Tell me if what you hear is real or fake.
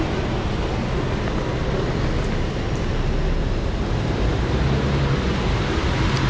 real